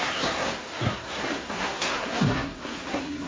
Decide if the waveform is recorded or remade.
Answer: remade